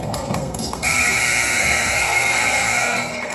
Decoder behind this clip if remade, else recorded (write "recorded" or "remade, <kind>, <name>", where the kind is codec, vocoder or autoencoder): remade, codec, SNAC